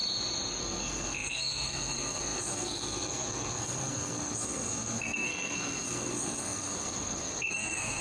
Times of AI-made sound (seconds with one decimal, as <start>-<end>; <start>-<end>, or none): 0.6-8.0